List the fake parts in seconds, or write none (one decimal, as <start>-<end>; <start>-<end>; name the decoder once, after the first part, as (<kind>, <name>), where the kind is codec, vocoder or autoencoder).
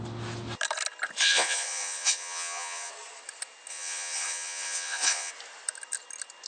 1.2-2.9 (vocoder, Vocos); 3.7-5.3